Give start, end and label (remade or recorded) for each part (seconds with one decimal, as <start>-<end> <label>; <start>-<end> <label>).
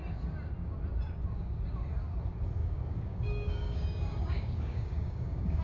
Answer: 0.0-2.6 recorded; 2.6-5.6 remade